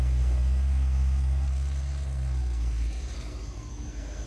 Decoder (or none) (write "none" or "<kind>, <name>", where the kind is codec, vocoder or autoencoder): codec, SNAC